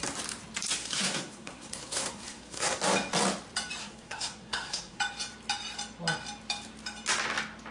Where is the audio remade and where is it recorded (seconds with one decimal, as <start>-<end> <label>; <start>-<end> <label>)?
0.0-0.8 recorded; 0.8-2.8 remade; 2.8-3.8 recorded; 3.8-5.0 remade; 5.0-7.7 recorded